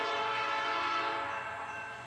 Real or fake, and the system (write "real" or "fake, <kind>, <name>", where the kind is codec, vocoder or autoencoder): fake, vocoder, Vocos